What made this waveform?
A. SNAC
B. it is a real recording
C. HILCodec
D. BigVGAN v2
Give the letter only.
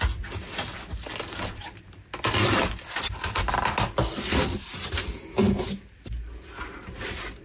B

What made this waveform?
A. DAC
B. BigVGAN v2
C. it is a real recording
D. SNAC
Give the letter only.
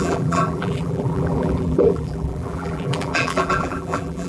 B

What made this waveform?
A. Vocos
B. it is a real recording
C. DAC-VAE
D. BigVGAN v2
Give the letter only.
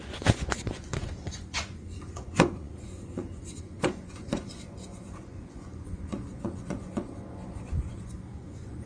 A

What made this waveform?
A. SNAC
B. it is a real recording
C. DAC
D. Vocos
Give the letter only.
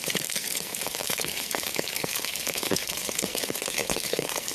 A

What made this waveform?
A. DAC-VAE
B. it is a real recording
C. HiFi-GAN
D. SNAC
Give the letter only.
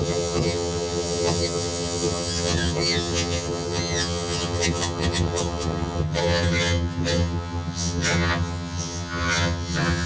C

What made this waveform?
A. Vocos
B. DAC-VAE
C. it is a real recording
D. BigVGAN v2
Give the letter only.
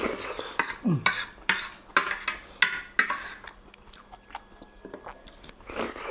C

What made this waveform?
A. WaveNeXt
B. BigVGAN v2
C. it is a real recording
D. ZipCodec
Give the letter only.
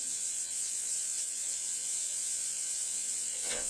A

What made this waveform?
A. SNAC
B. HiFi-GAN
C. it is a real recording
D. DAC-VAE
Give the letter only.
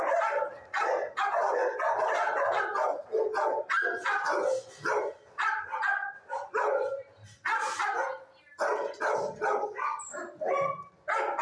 C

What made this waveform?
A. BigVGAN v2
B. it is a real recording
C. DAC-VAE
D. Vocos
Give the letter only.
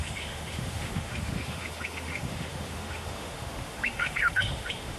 C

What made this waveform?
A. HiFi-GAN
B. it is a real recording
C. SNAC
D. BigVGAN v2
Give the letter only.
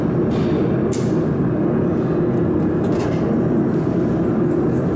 B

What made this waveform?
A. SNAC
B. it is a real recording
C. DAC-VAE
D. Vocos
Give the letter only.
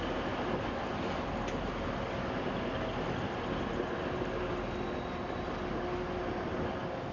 B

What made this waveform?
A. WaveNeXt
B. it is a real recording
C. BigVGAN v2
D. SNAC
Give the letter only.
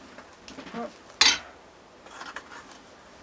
B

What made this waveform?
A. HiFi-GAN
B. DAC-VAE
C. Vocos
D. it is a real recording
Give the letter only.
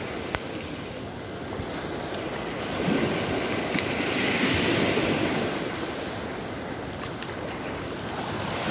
D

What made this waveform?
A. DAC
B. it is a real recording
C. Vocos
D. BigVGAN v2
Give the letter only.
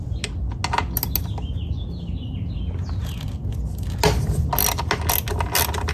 B